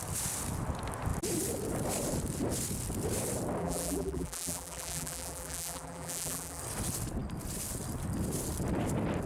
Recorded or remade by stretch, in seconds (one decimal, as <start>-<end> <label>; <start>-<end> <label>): 0.0-3.6 recorded; 3.6-6.6 remade; 6.6-9.3 recorded